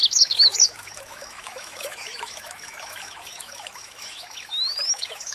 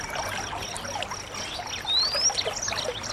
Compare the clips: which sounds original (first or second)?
second